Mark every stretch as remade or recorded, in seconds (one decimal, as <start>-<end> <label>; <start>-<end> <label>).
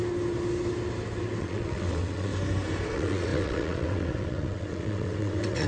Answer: 0.0-1.4 recorded; 1.4-2.3 remade; 2.3-2.9 recorded; 2.9-5.7 remade